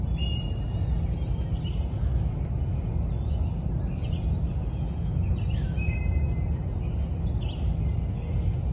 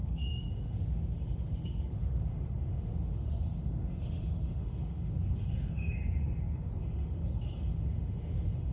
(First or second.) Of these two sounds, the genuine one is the first